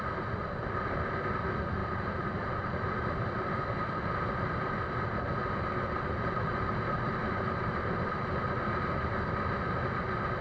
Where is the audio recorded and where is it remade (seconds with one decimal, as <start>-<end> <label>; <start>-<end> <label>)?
0.0-1.8 recorded; 1.8-3.6 remade; 3.6-5.4 recorded; 5.4-8.3 remade; 8.3-10.4 recorded

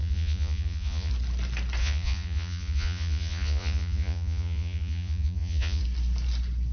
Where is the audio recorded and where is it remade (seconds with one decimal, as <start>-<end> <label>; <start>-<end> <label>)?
0.0-1.1 remade; 1.1-1.8 recorded; 1.8-5.8 remade; 5.8-6.7 recorded

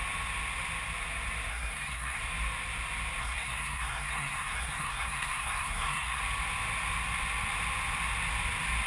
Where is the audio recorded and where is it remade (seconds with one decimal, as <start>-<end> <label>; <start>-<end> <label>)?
0.0-1.5 recorded; 1.5-2.2 remade; 2.2-3.2 recorded; 3.2-6.2 remade; 6.2-8.9 recorded

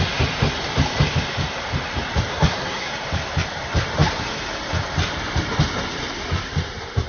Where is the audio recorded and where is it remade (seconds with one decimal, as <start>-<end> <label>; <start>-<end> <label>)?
0.0-2.3 recorded; 2.3-2.9 remade; 2.9-7.1 recorded

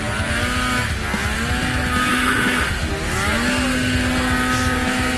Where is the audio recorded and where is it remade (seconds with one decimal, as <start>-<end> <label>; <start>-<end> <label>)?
0.0-2.1 recorded; 2.1-2.9 remade; 2.9-5.2 recorded

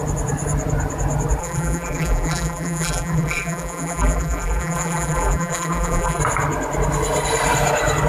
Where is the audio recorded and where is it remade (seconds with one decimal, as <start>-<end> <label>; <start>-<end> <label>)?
0.0-1.4 recorded; 1.4-6.2 remade; 6.2-8.1 recorded

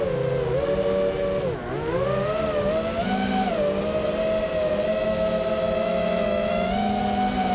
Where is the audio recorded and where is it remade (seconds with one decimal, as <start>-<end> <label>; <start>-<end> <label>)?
0.0-4.9 recorded; 4.9-6.9 remade; 6.9-7.5 recorded

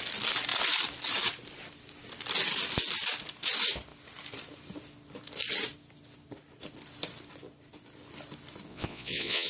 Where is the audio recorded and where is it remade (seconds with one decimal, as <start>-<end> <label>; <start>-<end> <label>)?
0.0-8.7 recorded; 8.7-9.5 remade